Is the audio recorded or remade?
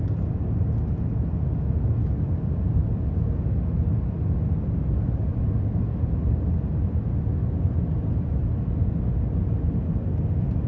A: recorded